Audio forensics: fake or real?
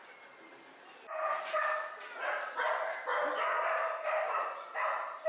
real